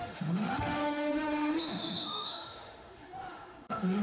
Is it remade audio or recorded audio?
remade